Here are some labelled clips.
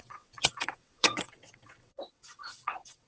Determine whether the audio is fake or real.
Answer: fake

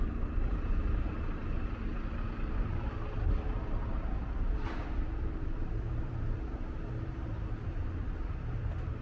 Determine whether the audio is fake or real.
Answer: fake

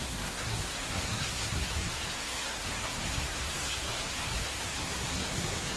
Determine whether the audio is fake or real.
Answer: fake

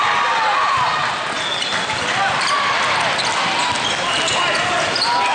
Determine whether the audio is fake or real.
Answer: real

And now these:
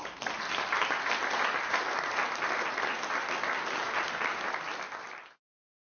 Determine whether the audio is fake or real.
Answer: real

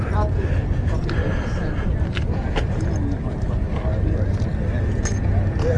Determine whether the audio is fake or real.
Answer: real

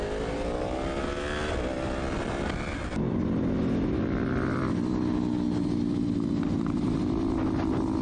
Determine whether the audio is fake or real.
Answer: real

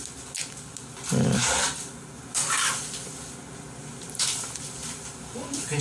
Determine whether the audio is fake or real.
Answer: real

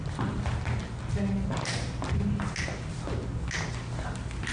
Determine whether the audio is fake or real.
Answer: real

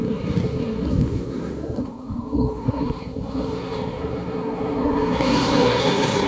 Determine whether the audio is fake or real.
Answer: fake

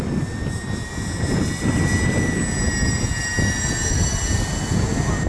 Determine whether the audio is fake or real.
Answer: real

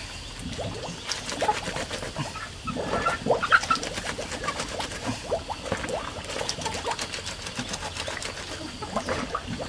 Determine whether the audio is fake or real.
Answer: real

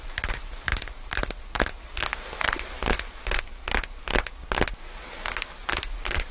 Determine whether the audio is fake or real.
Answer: real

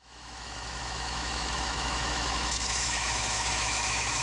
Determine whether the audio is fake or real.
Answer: fake